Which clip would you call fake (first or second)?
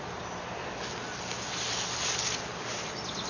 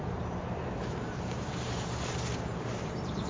second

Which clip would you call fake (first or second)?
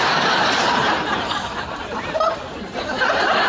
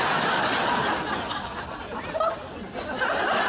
first